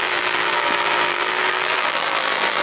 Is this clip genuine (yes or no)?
no